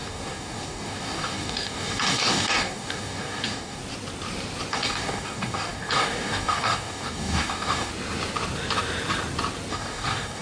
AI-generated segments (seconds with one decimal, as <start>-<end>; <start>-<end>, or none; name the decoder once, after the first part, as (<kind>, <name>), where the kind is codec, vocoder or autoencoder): 0.0-3.8 (codec, DAC); 4.7-7.9; 9.7-10.4